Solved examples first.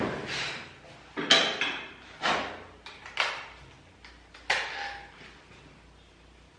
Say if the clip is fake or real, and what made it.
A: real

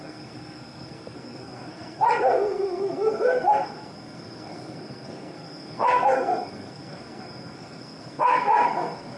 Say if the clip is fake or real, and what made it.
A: fake, codec, SNAC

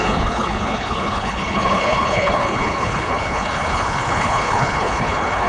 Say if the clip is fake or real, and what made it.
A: fake, codec, HILCodec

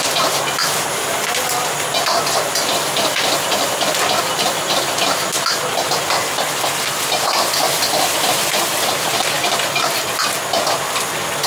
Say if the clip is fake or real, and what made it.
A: real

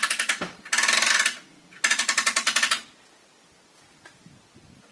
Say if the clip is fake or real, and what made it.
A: real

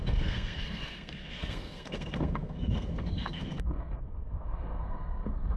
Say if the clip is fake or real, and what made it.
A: fake, codec, SNAC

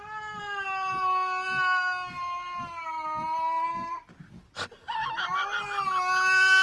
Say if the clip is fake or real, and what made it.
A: real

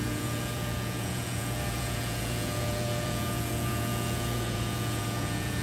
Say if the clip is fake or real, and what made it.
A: fake, vocoder, Vocos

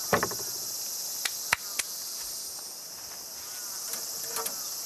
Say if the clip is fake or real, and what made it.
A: real